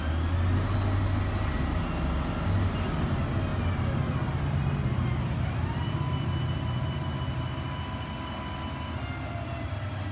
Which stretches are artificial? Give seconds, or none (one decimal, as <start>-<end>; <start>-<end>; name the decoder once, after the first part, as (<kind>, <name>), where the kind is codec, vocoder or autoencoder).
none